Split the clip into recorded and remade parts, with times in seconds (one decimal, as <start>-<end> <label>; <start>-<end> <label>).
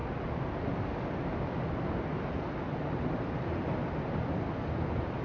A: 0.0-5.2 recorded